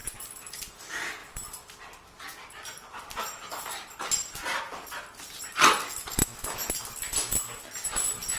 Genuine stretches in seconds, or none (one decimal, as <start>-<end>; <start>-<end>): 0.0-6.2; 6.7-8.4